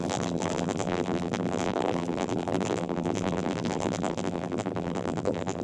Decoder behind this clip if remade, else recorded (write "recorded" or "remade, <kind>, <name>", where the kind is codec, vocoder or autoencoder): remade, vocoder, BigVGAN v2